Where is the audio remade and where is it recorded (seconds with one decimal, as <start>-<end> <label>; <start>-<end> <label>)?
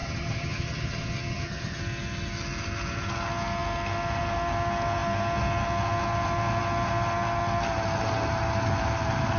0.0-1.8 remade; 1.8-9.4 recorded